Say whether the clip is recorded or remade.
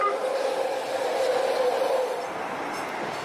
remade